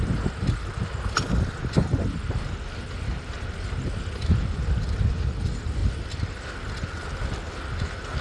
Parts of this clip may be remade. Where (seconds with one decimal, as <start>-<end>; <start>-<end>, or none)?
none